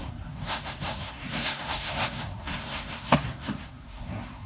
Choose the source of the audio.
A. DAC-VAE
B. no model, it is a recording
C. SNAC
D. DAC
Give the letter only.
C